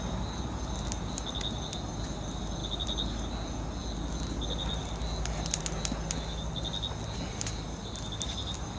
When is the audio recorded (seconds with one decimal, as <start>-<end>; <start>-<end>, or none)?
0.0-8.8